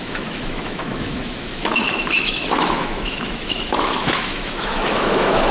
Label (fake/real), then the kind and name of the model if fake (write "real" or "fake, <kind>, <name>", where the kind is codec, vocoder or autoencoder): fake, autoencoder, DAC-VAE